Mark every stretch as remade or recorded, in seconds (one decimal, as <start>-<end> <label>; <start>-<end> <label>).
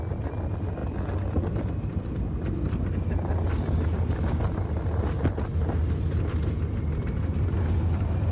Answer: 0.0-8.3 recorded